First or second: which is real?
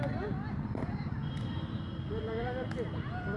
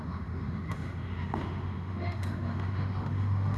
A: first